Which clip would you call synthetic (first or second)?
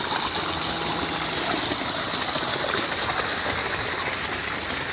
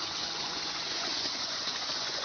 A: second